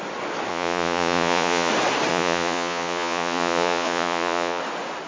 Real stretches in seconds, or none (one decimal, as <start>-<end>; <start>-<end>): 0.0-0.5; 1.7-2.1; 4.6-5.1